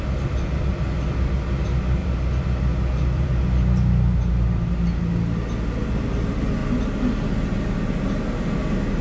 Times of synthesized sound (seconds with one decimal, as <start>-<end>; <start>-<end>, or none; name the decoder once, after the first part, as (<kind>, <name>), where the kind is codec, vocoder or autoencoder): 2.0-3.4 (vocoder, BigVGAN v2)